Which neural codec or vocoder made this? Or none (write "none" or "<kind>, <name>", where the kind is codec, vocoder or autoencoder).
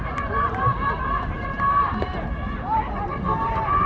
vocoder, BigVGAN v2